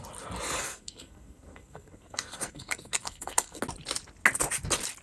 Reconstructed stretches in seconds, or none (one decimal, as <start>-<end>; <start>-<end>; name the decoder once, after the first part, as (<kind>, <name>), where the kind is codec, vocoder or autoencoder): 0.6-3.6 (codec, SNAC)